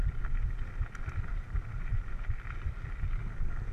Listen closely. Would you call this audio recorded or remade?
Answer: recorded